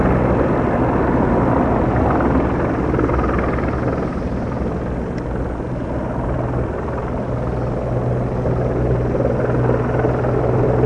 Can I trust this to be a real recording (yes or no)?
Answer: yes